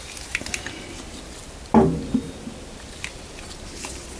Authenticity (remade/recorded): recorded